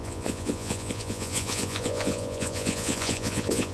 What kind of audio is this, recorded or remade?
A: remade